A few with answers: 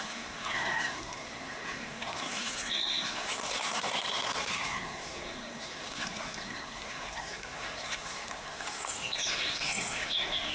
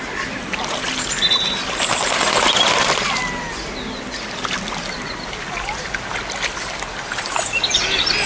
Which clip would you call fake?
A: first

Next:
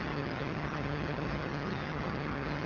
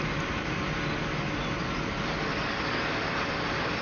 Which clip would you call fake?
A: first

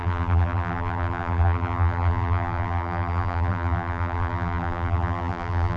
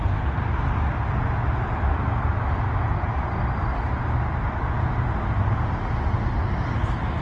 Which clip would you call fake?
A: first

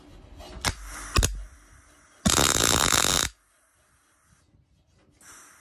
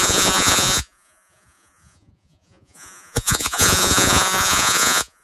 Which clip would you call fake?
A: second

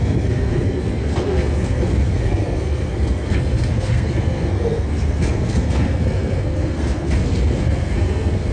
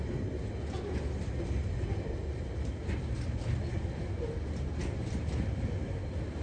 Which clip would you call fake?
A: first